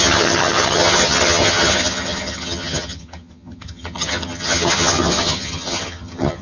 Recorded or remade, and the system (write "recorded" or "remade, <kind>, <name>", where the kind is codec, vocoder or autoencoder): remade, vocoder, HiFi-GAN